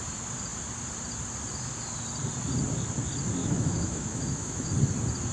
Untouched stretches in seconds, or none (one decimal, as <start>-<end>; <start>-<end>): 0.0-3.4; 4.7-5.3